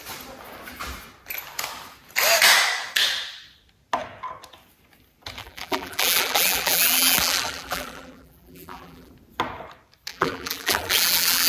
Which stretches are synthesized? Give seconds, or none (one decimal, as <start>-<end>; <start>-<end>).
5.4-9.1; 10.1-11.5